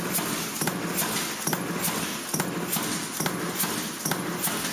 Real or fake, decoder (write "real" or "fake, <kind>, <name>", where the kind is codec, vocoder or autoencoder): real